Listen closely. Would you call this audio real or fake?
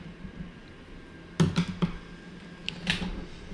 real